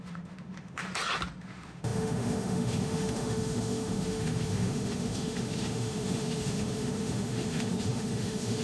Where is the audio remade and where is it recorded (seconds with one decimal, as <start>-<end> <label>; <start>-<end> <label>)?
0.0-0.9 remade; 0.9-1.4 recorded; 1.4-8.6 remade